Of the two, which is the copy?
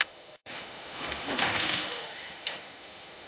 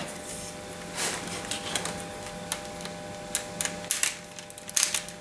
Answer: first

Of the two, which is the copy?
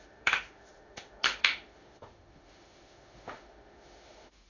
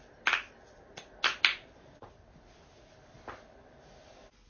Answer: first